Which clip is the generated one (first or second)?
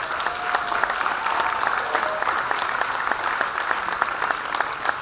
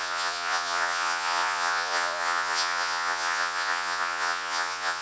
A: second